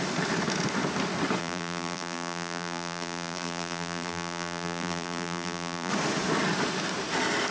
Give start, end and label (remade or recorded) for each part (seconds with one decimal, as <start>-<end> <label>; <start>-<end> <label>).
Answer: 0.0-1.4 recorded; 1.4-5.9 remade; 5.9-7.5 recorded